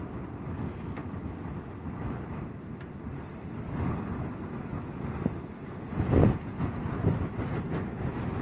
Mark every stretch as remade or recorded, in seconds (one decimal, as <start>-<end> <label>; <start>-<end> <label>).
0.0-6.2 recorded; 6.2-6.8 remade; 6.8-8.4 recorded